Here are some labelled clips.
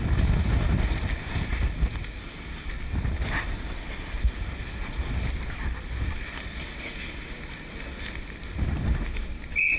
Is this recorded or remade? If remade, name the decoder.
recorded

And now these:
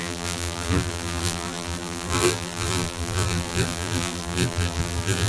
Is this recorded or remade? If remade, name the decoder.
remade, vocoder, BigVGAN v2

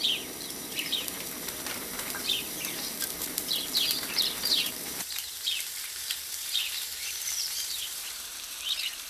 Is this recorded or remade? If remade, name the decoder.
remade, vocoder, BigVGAN v2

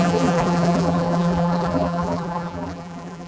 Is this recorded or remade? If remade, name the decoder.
remade, vocoder, BigVGAN v2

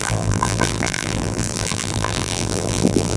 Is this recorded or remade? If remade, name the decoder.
remade, vocoder, BigVGAN v2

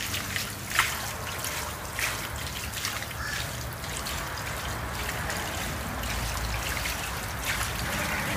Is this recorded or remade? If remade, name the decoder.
recorded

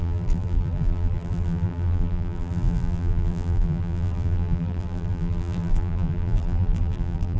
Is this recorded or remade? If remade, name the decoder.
remade, vocoder, BigVGAN v2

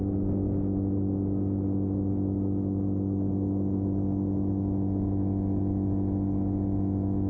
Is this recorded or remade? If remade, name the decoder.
recorded